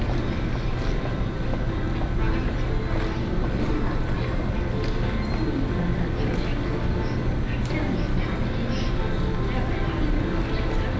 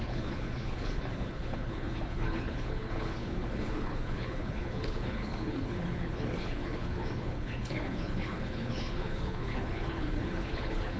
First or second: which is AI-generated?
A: second